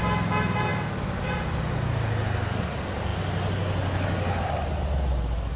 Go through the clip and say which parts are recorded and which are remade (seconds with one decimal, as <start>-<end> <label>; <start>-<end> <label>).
0.0-5.6 recorded